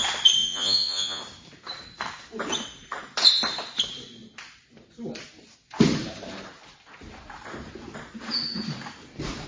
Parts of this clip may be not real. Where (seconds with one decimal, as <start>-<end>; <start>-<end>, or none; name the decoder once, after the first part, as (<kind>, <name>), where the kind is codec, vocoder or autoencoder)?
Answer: 0.4-1.2 (vocoder, Vocos)

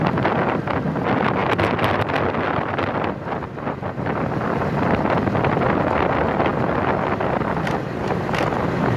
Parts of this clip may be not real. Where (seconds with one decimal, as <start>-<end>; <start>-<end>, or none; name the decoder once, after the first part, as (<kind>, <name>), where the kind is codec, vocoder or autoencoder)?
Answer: none